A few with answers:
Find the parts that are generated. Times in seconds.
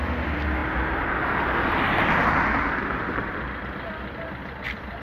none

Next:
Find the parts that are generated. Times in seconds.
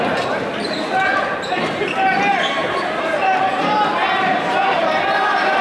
0.0-5.6 (vocoder, BigVGAN v2)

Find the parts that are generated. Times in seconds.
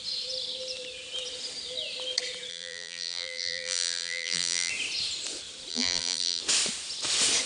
2.5-4.7 (vocoder, BigVGAN v2); 5.7-6.4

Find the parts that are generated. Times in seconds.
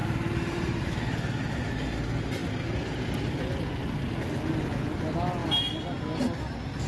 0.0-0.8 (vocoder, BigVGAN v2)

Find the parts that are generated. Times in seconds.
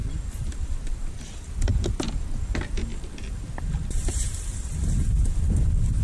0.0-1.1 (vocoder, BigVGAN v2); 2.9-6.0